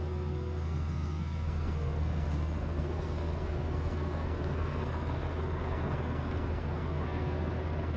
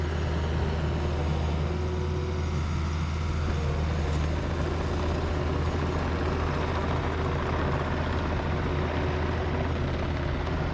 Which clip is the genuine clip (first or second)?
second